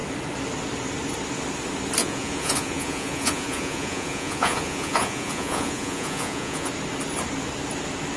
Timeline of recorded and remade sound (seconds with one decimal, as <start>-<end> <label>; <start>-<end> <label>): 0.0-2.0 recorded; 2.0-6.7 remade; 6.7-8.2 recorded